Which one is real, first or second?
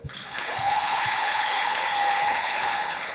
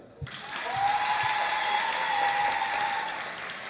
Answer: second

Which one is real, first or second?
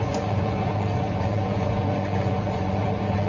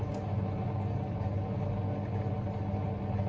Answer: second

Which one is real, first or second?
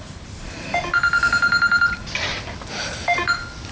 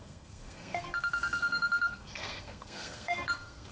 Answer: first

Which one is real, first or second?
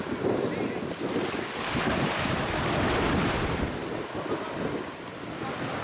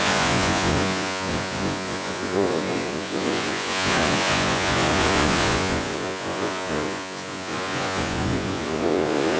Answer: first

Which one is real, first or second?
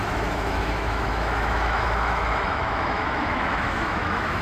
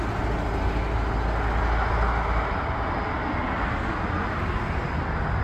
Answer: second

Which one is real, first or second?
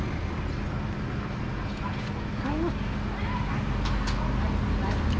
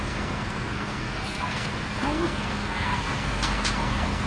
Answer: first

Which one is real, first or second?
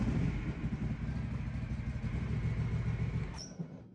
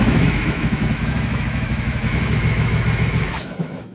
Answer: first